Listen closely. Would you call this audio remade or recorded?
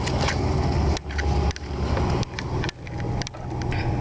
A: recorded